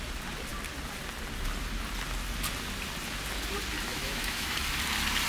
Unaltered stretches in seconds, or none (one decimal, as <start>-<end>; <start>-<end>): 0.0-3.9; 4.6-5.3